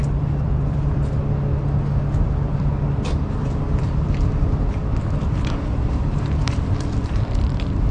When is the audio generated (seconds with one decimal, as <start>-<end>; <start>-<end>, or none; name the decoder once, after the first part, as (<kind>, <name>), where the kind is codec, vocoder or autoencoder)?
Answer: 0.0-1.0 (vocoder, BigVGAN v2); 2.2-7.9